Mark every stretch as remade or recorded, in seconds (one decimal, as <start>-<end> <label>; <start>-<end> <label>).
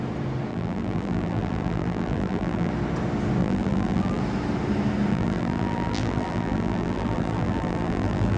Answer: 0.0-0.5 recorded; 0.5-2.7 remade; 2.7-3.4 recorded; 3.4-4.2 remade; 4.2-5.1 recorded; 5.1-8.4 remade